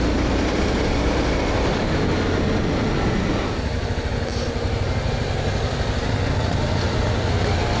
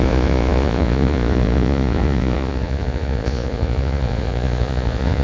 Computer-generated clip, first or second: second